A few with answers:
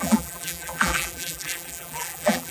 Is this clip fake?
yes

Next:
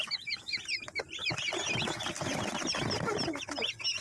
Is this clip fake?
no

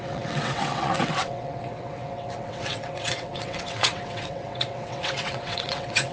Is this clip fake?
yes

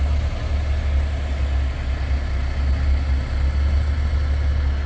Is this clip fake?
no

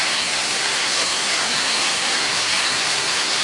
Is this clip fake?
yes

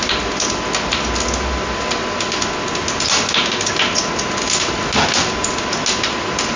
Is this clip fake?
no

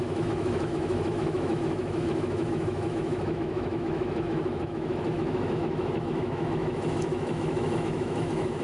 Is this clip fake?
yes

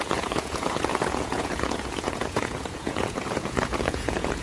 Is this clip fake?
yes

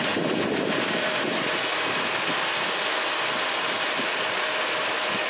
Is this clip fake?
no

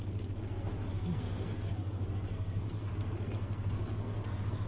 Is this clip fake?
yes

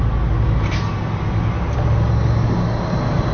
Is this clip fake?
no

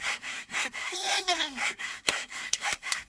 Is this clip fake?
yes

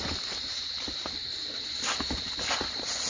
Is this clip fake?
no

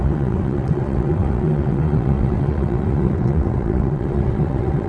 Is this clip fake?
yes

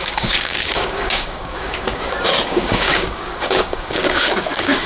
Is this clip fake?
yes